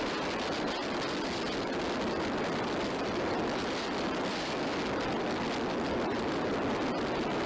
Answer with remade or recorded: recorded